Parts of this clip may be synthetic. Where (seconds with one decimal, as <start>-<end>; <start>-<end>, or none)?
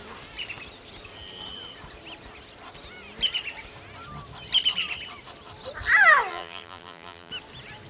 6.3-7.3